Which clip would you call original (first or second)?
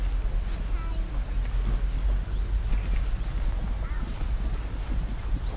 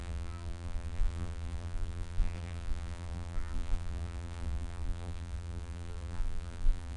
first